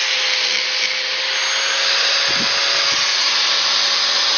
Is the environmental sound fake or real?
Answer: real